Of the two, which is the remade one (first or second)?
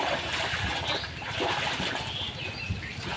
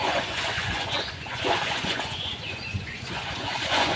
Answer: second